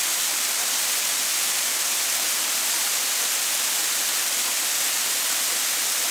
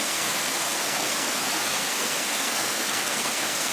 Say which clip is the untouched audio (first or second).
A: first